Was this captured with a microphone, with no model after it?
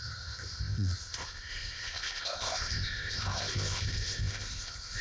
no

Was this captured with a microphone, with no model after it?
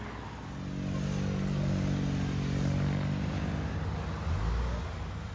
yes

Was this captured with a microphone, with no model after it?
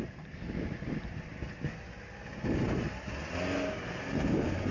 yes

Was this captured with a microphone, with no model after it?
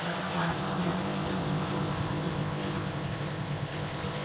no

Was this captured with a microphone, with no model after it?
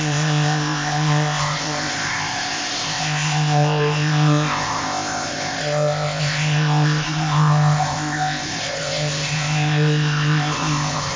no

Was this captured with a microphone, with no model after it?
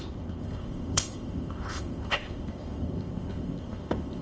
no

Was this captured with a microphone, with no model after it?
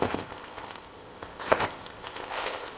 no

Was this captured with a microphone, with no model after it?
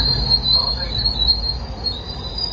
yes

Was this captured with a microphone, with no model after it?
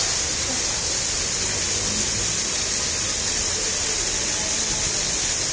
yes